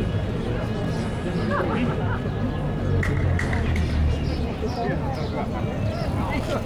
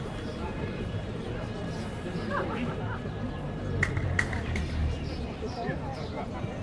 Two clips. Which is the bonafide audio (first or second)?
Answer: first